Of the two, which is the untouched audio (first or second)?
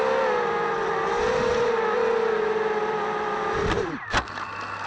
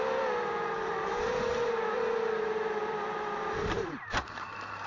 first